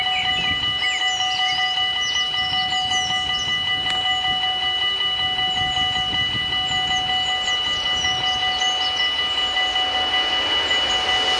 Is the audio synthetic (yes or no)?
no